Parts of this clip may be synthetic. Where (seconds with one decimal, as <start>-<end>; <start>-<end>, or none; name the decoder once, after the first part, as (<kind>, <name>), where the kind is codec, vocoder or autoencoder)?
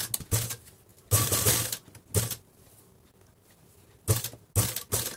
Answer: 0.9-1.5 (vocoder, BigVGAN v2)